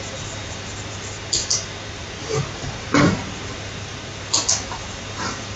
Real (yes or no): yes